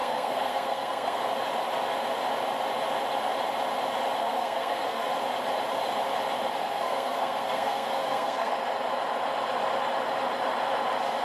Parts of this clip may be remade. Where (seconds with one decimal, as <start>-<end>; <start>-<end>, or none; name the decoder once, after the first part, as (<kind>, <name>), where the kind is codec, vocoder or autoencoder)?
0.0-1.2 (codec, SNAC); 4.2-5.1; 6.6-8.5

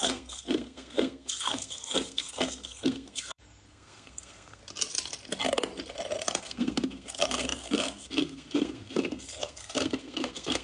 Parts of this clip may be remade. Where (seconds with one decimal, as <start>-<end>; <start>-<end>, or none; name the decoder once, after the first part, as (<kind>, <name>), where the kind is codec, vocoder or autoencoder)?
0.0-4.6 (codec, SNAC); 6.4-10.6

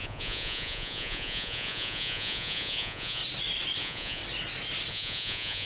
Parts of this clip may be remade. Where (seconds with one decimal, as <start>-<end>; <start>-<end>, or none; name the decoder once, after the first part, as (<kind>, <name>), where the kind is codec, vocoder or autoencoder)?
0.0-3.2 (vocoder, Vocos); 3.8-4.2; 4.9-5.7